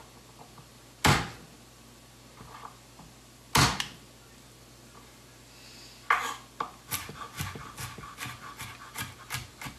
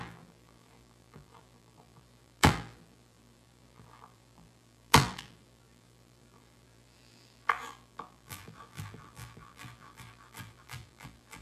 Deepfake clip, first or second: second